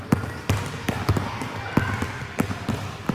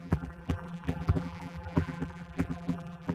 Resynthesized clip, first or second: second